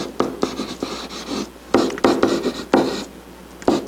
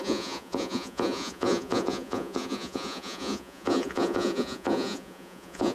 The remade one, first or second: second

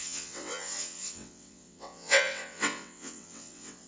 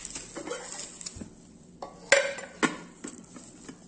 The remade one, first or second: first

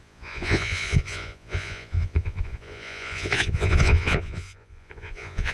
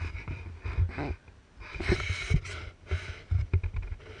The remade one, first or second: first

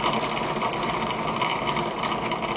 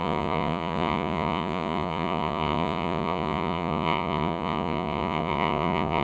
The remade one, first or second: second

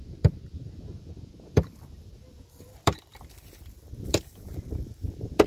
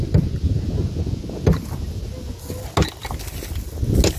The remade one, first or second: first